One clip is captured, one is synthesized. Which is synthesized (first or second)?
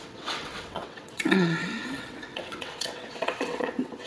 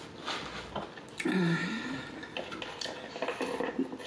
first